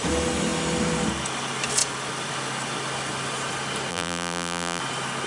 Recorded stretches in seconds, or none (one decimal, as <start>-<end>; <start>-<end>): 0.0-3.9; 4.8-5.3